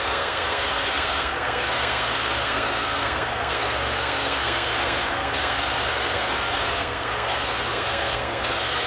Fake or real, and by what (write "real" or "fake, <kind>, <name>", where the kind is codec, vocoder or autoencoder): fake, codec, SNAC